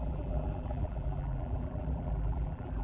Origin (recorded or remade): remade